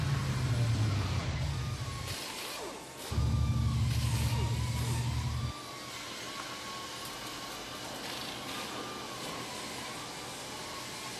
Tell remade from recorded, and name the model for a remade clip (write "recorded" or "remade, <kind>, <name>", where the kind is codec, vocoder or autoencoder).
recorded